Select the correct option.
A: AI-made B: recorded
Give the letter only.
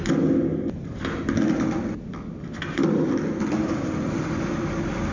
B